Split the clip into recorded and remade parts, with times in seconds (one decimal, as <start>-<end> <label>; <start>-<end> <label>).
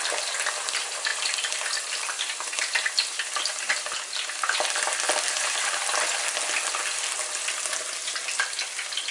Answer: 0.0-1.1 recorded; 1.1-6.0 remade; 6.0-9.1 recorded